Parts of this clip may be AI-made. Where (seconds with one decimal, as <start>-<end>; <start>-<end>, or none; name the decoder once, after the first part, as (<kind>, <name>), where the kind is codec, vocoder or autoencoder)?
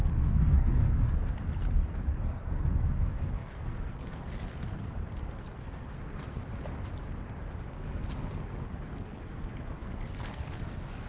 0.0-6.4 (codec, SNAC); 7.7-11.1